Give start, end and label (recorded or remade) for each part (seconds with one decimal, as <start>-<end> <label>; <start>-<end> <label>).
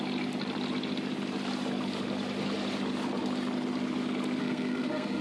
0.0-4.4 recorded; 4.4-5.2 remade